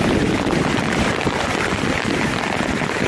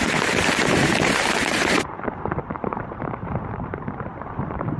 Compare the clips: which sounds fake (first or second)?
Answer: second